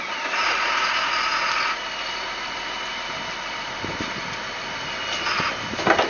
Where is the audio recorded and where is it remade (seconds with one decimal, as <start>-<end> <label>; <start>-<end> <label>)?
0.0-6.1 recorded